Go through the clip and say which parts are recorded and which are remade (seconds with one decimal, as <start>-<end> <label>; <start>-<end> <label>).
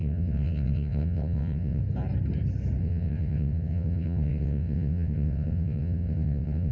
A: 0.0-1.8 remade; 1.8-2.8 recorded; 2.8-6.7 remade